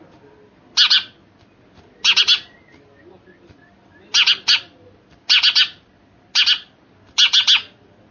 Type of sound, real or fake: real